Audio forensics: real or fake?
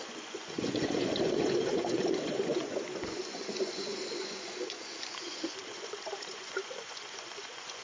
fake